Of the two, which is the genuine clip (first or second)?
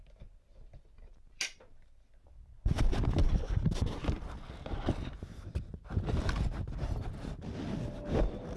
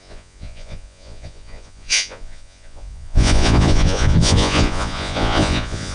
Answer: first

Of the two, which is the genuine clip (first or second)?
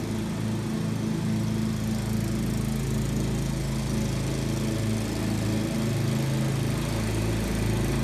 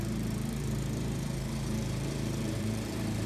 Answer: first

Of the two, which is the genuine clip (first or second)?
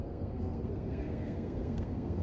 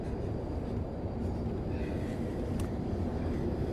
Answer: second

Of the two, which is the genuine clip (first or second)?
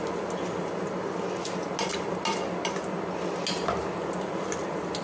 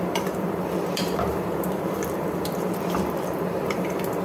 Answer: first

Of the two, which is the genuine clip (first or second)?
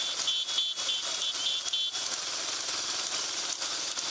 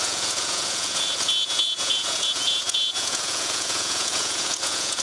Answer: first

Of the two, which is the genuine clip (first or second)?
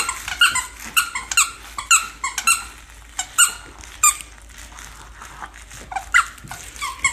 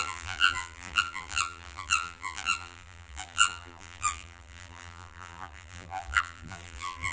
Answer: first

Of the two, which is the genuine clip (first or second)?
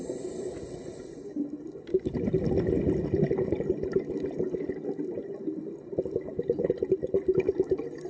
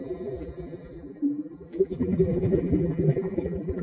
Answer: first